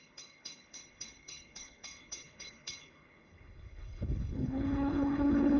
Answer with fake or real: fake